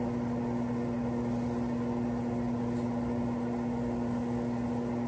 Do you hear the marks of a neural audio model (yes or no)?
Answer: no